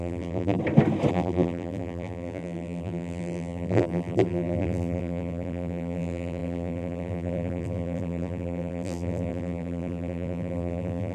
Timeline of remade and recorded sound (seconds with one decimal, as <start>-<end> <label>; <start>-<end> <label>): 0.0-0.6 remade; 0.6-1.1 recorded; 1.1-11.1 remade

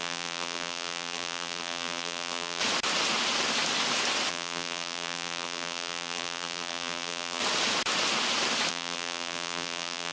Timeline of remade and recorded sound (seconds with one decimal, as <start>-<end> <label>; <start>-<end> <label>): 0.0-2.6 remade; 2.6-4.3 recorded; 4.3-7.4 remade; 7.4-8.7 recorded; 8.7-10.1 remade

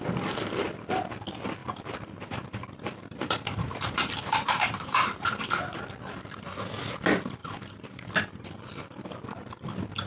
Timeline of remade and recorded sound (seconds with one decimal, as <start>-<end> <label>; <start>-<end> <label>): 0.0-1.6 recorded; 1.6-5.8 remade; 5.8-7.4 recorded; 7.4-8.5 remade; 8.5-10.1 recorded

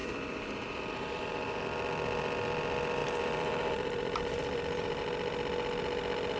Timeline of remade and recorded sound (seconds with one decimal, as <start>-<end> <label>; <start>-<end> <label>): 0.0-1.6 remade; 1.6-3.0 recorded; 3.0-5.0 remade; 5.0-6.4 recorded

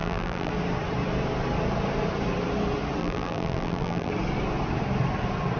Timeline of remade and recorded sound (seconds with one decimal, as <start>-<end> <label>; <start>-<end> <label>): 0.0-0.5 remade; 0.5-3.0 recorded; 3.0-4.1 remade; 4.1-5.6 recorded

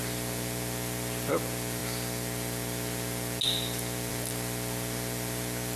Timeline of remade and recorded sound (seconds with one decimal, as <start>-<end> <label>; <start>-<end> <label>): 0.0-5.8 recorded

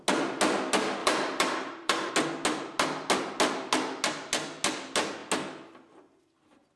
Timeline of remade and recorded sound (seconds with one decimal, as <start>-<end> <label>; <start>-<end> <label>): 0.0-1.0 recorded; 1.0-2.1 remade; 2.1-6.8 recorded